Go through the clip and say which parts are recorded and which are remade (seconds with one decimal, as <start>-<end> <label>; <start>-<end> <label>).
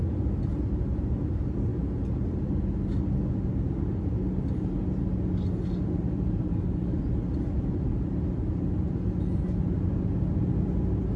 0.0-6.5 recorded; 6.5-7.0 remade; 7.0-11.2 recorded